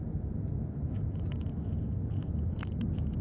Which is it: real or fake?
real